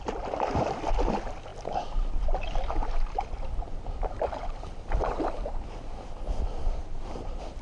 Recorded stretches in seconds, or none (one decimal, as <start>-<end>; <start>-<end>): 0.0-7.6